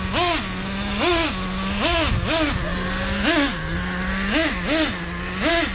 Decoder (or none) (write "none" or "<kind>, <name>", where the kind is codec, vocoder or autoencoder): none